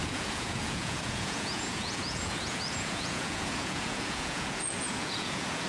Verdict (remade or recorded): remade